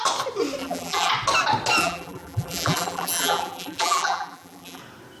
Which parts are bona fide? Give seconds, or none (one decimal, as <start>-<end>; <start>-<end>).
0.0-0.6; 1.1-1.8; 4.8-5.2